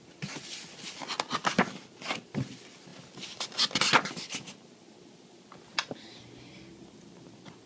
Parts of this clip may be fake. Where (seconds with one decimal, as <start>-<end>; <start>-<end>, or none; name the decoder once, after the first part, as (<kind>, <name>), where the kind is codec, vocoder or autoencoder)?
none